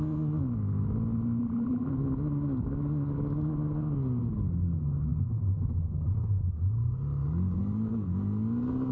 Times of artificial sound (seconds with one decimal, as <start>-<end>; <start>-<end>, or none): 1.4-1.9

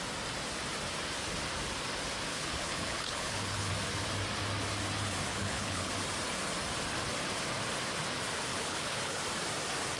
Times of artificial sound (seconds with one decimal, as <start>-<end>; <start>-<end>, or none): 2.3-3.7; 5.3-5.9; 8.5-9.2

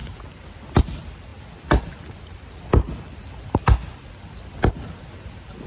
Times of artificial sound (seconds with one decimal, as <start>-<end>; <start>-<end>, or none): none

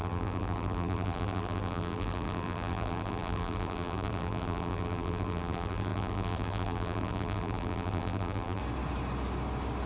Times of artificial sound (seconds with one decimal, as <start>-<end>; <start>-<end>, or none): 0.0-8.6

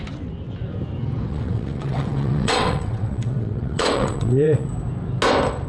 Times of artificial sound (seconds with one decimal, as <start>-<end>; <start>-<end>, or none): 1.3-4.7

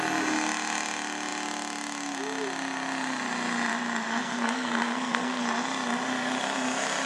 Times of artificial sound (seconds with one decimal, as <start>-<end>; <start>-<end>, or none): 4.2-5.4

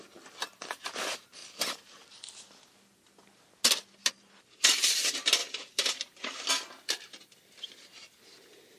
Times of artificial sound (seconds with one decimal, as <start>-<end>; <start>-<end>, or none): 5.4-6.5

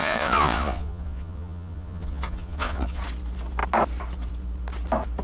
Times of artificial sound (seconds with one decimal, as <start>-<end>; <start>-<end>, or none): 0.0-3.0